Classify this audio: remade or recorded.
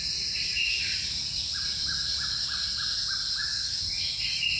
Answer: recorded